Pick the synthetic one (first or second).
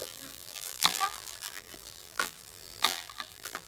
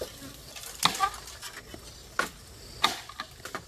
first